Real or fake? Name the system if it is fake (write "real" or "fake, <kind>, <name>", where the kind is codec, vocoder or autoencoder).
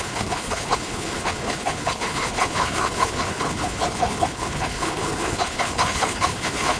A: fake, codec, HILCodec